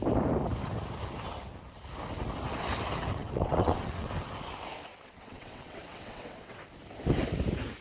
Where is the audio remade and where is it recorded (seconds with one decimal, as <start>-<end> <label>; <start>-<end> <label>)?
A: 0.0-3.1 recorded; 3.1-4.1 remade; 4.1-4.9 recorded; 4.9-6.6 remade; 6.6-7.8 recorded

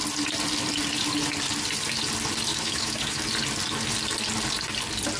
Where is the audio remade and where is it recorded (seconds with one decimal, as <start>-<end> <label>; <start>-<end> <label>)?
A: 0.0-2.5 recorded; 2.5-3.2 remade; 3.2-5.2 recorded

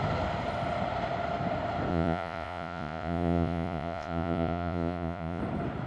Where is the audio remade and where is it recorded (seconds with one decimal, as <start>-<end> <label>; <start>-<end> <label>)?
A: 0.0-1.9 recorded; 1.9-5.4 remade; 5.4-5.9 recorded

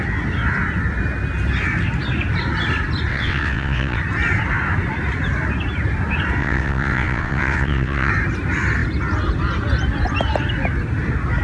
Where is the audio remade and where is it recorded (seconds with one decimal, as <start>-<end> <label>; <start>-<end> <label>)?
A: 0.0-3.1 recorded; 3.1-4.0 remade; 4.0-6.4 recorded; 6.4-8.1 remade; 8.1-11.4 recorded

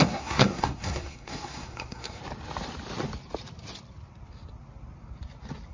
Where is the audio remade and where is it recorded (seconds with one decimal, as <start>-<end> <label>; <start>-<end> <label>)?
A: 0.0-2.2 remade; 2.2-5.7 recorded

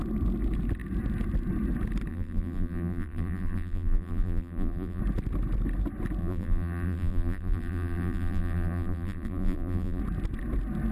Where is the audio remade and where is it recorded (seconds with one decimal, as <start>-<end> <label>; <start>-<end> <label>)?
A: 0.0-2.1 recorded; 2.1-5.0 remade; 5.0-6.2 recorded; 6.2-10.0 remade; 10.0-10.9 recorded

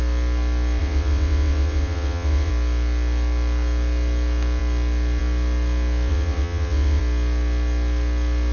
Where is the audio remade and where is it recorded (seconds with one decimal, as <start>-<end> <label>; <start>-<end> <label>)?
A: 0.0-0.8 recorded; 0.8-2.5 remade; 2.5-6.1 recorded; 6.1-7.0 remade; 7.0-8.5 recorded

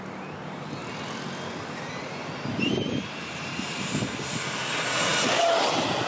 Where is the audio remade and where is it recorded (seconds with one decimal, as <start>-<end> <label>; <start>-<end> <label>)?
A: 0.0-6.1 recorded